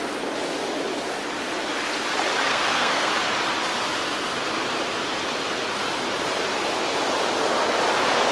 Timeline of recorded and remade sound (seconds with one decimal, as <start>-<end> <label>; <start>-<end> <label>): 0.0-2.5 recorded; 2.5-3.1 remade; 3.1-8.3 recorded